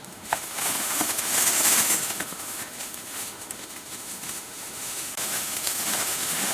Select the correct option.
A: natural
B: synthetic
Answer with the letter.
B